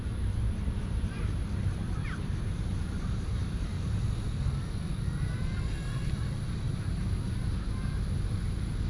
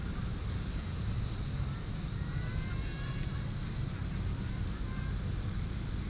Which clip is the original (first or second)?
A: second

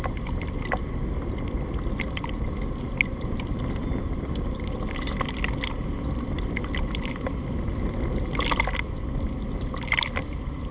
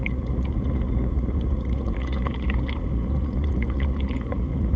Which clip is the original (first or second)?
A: first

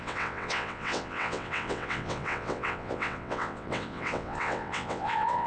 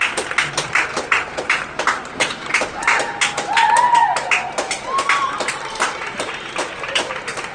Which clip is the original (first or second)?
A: second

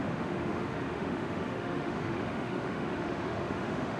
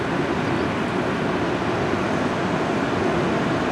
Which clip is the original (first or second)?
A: second